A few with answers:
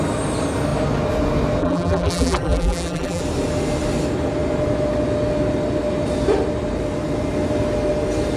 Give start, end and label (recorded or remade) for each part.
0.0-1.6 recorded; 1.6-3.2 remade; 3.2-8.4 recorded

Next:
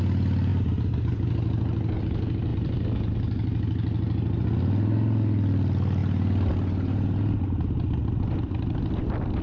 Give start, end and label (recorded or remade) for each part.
0.0-2.5 recorded; 2.5-3.1 remade; 3.1-6.0 recorded; 6.0-7.4 remade; 7.4-9.4 recorded

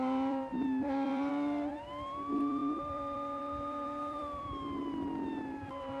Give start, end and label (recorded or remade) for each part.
0.0-6.0 remade